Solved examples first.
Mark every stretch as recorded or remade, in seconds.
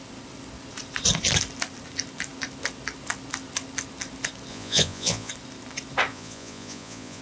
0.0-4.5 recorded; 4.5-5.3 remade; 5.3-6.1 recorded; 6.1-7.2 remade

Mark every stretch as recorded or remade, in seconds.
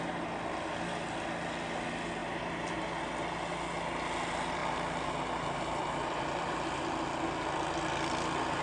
0.0-8.6 recorded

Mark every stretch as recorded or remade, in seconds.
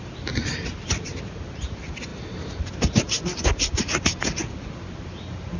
0.0-5.6 recorded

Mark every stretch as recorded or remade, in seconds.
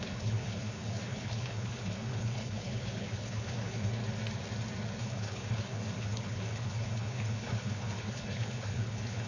0.0-4.0 remade; 4.0-5.0 recorded; 5.0-9.3 remade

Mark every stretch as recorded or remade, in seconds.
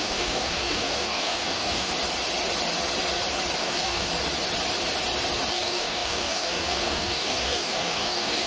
0.0-1.9 remade; 1.9-3.6 recorded; 3.6-4.1 remade; 4.1-5.5 recorded; 5.5-8.5 remade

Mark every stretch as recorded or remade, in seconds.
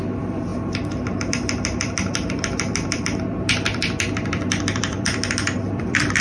0.0-6.2 remade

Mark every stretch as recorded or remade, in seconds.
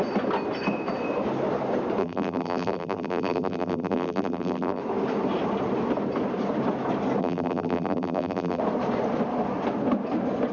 0.0-2.0 recorded; 2.0-4.8 remade; 4.8-7.2 recorded; 7.2-8.6 remade; 8.6-10.5 recorded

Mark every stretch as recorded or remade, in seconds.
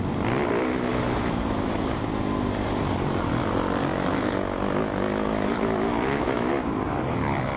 0.0-0.9 recorded; 0.9-1.8 remade; 1.8-3.8 recorded; 3.8-6.5 remade; 6.5-7.6 recorded